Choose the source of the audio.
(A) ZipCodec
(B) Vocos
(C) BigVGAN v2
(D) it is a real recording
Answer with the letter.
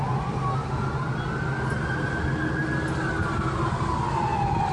D